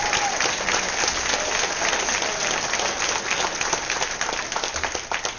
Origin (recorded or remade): recorded